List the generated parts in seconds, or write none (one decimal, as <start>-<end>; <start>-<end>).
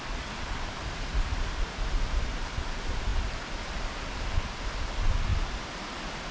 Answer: 0.0-6.3